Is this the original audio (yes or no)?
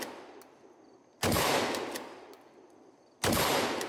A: yes